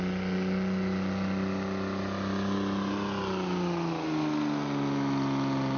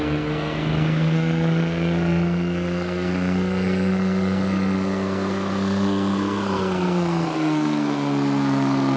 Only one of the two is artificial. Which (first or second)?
second